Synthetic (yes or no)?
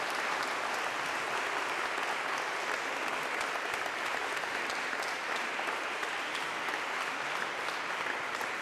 no